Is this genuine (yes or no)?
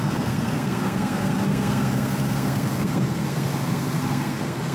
no